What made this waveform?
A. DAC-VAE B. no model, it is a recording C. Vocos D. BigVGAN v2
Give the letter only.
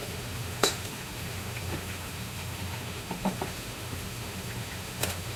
A